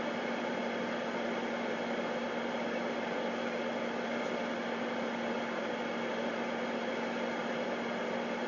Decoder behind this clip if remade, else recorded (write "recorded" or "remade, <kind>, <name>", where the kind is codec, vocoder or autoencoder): recorded